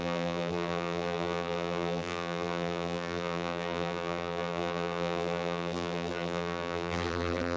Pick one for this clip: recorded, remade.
remade